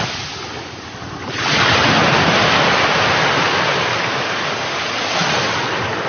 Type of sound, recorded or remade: recorded